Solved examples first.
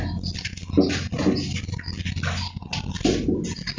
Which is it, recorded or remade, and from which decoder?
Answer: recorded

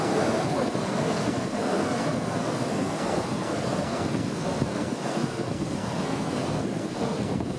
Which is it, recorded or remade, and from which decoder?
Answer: remade, codec, SNAC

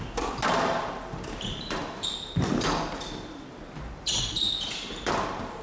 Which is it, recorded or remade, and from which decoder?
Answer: recorded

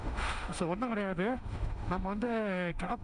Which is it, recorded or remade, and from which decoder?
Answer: remade, autoencoder, DAC-VAE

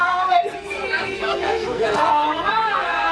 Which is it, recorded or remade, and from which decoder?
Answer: remade, codec, SNAC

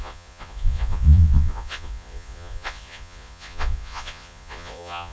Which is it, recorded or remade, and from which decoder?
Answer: remade, vocoder, Vocos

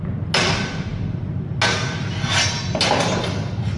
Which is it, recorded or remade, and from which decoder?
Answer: recorded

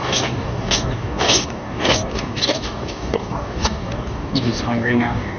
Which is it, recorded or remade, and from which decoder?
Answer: remade, codec, DAC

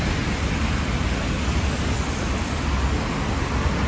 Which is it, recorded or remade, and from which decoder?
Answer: recorded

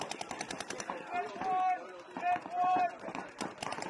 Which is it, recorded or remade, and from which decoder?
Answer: remade, vocoder, BigVGAN v2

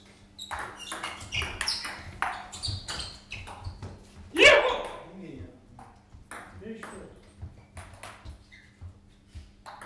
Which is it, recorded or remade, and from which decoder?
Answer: recorded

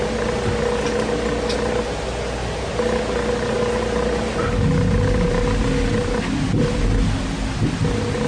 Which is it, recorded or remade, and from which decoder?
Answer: recorded